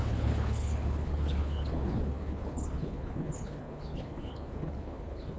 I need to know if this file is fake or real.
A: fake